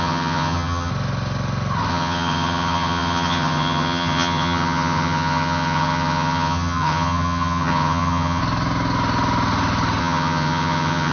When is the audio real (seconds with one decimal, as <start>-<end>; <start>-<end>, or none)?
0.9-1.9; 8.4-10.0